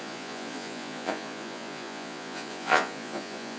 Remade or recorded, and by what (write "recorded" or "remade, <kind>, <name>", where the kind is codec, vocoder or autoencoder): remade, vocoder, Vocos